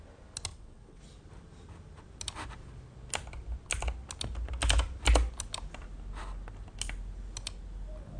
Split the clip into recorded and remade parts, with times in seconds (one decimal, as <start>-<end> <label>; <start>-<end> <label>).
0.0-0.5 recorded; 0.5-1.0 remade; 1.0-8.2 recorded